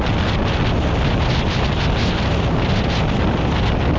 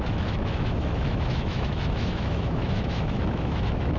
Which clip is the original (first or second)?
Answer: first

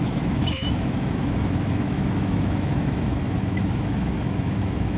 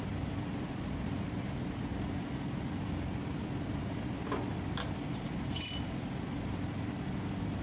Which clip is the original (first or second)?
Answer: second